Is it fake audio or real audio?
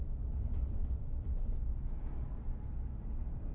real